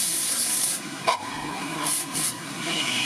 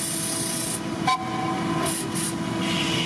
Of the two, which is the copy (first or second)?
first